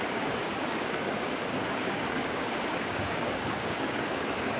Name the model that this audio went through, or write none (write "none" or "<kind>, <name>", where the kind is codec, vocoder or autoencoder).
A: codec, DAC